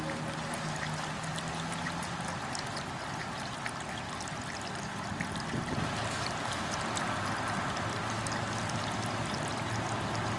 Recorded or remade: recorded